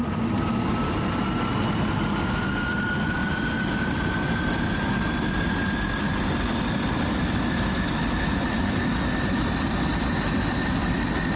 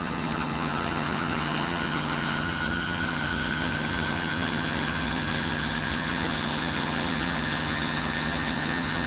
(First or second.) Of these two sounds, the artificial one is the second